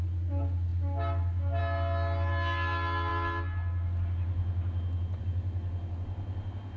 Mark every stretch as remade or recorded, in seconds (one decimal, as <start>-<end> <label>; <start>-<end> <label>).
0.0-6.8 recorded